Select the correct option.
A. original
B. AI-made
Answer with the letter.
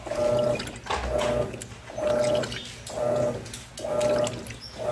A